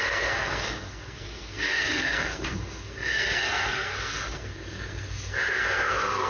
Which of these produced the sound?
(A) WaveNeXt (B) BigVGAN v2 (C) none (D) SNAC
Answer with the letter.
D